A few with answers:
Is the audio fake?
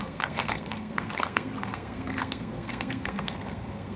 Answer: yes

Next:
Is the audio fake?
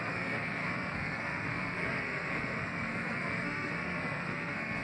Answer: yes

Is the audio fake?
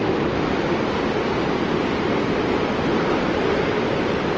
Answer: no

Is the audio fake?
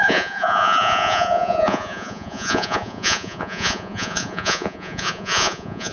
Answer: yes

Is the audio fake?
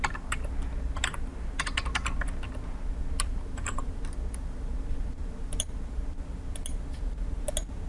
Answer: no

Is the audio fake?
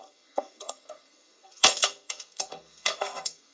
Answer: yes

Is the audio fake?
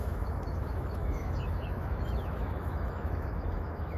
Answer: yes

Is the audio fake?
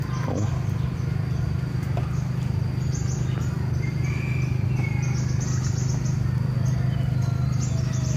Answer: no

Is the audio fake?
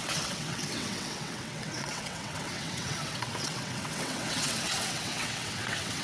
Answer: yes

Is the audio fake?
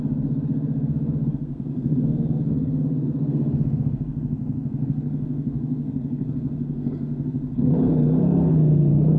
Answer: yes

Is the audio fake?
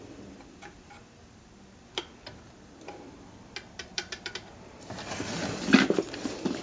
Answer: no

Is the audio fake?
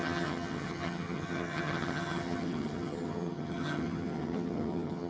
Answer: yes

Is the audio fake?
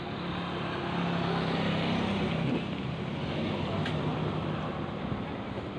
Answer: no